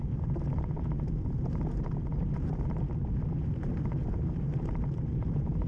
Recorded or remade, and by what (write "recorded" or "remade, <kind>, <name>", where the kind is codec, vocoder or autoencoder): remade, vocoder, BigVGAN v2